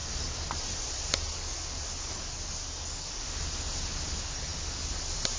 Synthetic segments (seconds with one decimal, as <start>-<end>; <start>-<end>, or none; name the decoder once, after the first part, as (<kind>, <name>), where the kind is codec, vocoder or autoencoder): none